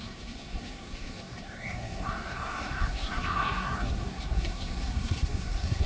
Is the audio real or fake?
fake